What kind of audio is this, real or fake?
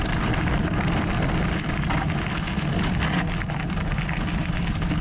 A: fake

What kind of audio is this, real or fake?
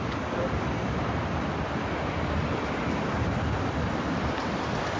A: real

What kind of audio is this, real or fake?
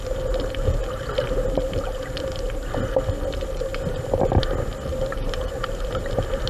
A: real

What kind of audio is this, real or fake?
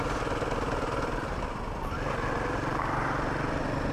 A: real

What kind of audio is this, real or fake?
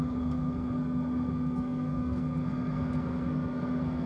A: fake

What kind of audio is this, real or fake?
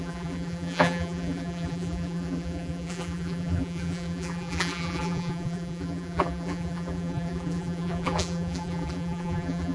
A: fake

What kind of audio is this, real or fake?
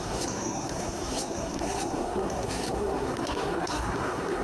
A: fake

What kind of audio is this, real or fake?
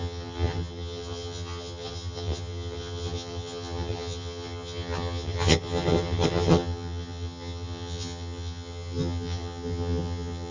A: fake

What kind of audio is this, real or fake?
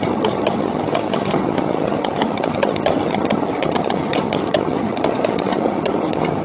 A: fake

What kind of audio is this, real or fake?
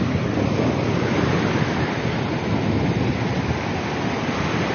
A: real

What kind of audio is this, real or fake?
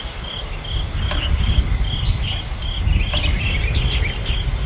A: real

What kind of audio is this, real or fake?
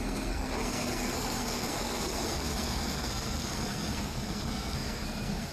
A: fake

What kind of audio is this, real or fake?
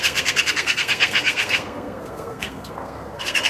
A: fake